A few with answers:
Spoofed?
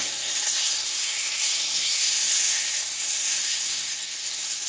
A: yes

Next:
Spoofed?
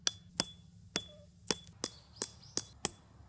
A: no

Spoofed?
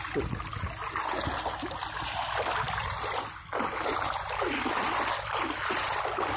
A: no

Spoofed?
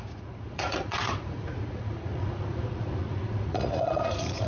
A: yes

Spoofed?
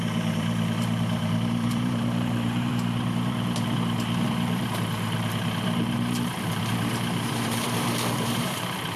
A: yes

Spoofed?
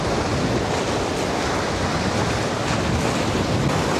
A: no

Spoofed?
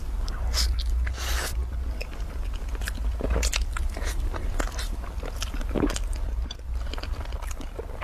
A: no